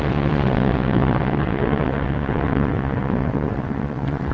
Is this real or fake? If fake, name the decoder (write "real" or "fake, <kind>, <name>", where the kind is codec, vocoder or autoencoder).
fake, vocoder, WaveNeXt